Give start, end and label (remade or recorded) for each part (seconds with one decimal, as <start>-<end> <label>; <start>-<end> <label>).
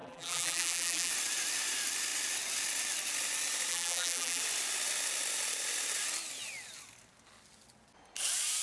0.0-1.1 remade; 1.1-3.7 recorded; 3.7-4.4 remade; 4.4-8.6 recorded